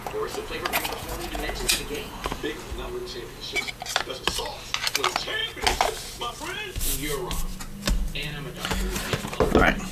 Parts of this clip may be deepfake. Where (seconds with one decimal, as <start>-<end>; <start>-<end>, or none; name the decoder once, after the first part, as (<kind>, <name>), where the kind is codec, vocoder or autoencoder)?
0.4-2.1 (vocoder, Vocos)